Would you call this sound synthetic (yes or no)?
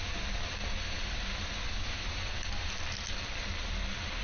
no